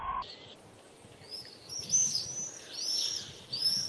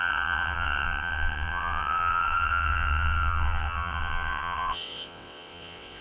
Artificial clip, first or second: second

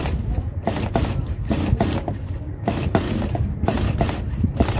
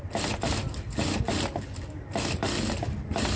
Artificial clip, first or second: first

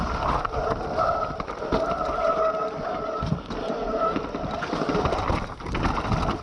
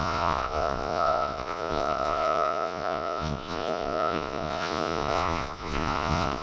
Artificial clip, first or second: second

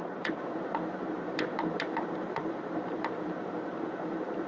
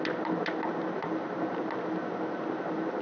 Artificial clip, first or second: first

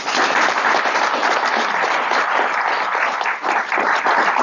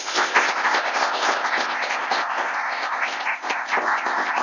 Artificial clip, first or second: second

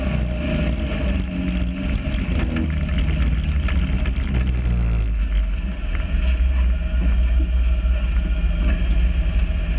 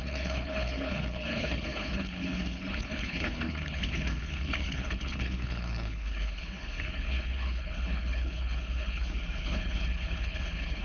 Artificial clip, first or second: second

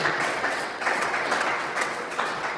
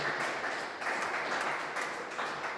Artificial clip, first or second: first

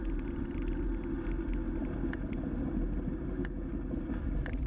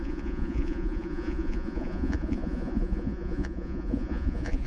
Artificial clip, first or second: second